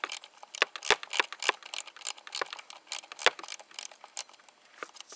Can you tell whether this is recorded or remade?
recorded